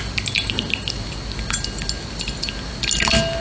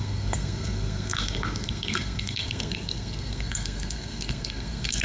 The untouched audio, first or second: first